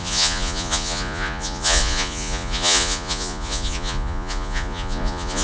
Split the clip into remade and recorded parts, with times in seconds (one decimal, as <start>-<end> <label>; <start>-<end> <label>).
0.0-5.4 remade